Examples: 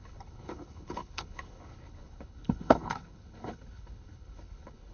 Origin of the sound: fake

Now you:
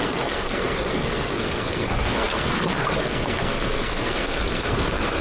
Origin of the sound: fake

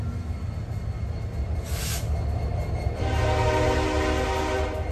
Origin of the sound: real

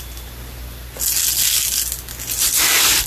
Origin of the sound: real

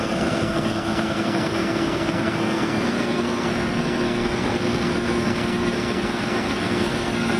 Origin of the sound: fake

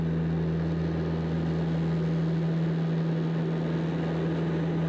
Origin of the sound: real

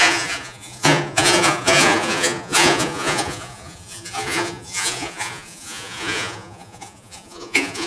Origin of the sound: fake